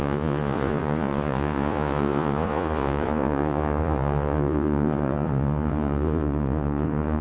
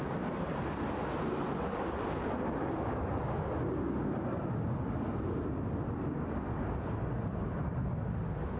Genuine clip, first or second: second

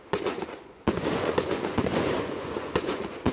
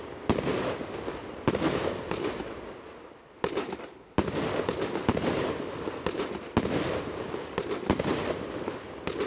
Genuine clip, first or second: second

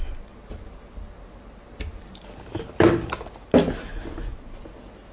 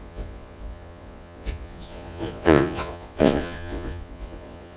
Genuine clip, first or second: first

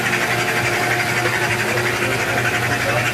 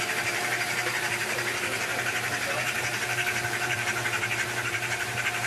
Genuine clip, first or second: first